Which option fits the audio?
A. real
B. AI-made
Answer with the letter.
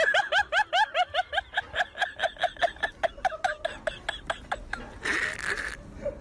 A